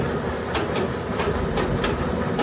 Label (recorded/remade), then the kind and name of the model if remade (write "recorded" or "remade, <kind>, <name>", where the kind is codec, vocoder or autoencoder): recorded